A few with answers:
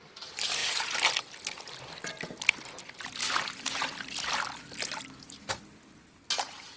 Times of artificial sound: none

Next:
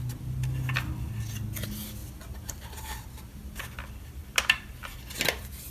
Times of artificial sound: 2.0-3.6 (vocoder, BigVGAN v2)